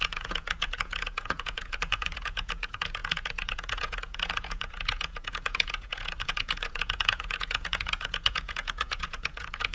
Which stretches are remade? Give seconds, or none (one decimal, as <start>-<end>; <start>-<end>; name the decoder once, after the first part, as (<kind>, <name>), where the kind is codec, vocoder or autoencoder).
0.0-9.7 (vocoder, Vocos)